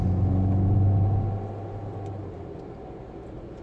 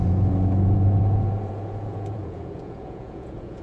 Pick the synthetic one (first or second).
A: second